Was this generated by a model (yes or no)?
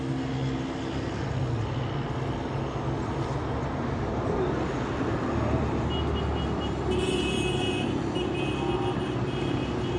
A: no